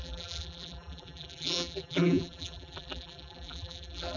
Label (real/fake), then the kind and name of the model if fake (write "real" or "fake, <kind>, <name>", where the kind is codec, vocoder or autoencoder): fake, vocoder, BigVGAN v2